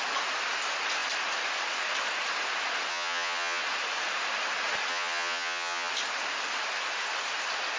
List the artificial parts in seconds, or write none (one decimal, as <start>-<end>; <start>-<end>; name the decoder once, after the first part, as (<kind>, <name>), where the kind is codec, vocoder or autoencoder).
2.9-3.6 (vocoder, HiFi-GAN); 4.9-5.9